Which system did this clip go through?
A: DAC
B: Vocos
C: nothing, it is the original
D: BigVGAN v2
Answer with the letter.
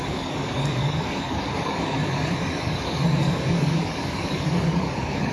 A